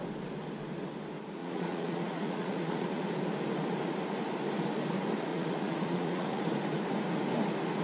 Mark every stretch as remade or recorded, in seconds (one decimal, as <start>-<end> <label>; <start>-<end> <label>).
0.0-1.4 recorded; 1.4-3.0 remade; 3.0-5.3 recorded; 5.3-6.4 remade; 6.4-7.8 recorded